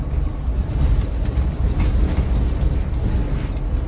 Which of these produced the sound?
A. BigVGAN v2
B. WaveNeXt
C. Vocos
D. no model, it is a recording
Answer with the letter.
D